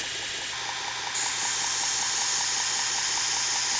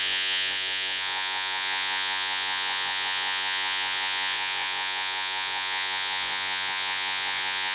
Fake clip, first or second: second